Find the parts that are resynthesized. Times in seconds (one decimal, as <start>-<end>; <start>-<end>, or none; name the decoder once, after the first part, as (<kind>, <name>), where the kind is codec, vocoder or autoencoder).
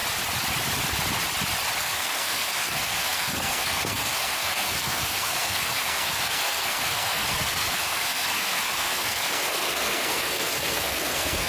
1.8-11.5 (codec, SNAC)